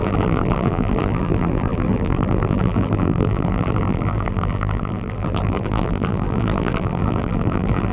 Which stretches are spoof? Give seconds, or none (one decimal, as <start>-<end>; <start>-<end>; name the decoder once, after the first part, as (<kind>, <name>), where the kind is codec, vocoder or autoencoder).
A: 0.0-7.9 (vocoder, BigVGAN v2)